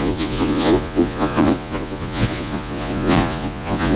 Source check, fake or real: fake